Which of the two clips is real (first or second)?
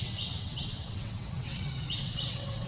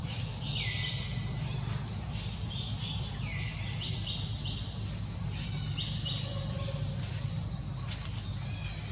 second